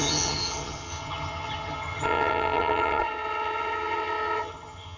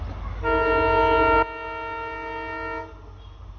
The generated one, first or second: first